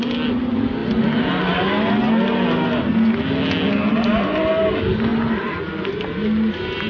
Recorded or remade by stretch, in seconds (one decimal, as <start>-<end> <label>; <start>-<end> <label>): 0.0-6.9 recorded